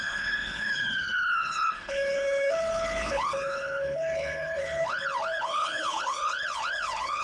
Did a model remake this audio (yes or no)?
yes